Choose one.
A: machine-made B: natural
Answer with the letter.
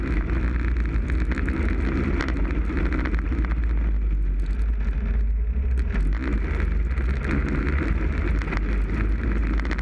B